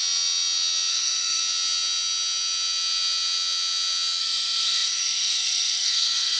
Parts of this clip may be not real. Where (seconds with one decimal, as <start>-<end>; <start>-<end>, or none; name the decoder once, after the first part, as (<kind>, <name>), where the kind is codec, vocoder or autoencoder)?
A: 0.9-1.4 (codec, SNAC); 4.2-6.4